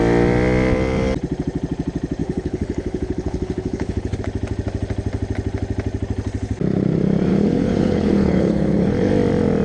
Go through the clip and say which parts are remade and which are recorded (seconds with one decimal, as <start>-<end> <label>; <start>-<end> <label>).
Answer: 0.0-2.2 recorded; 2.2-4.2 remade; 4.2-7.3 recorded; 7.3-9.1 remade; 9.1-9.6 recorded